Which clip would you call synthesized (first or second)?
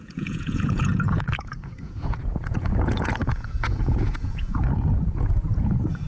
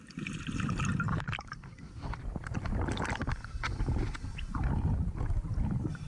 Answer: first